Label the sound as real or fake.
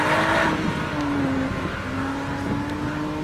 real